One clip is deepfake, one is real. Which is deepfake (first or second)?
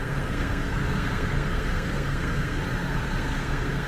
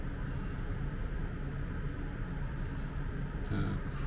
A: first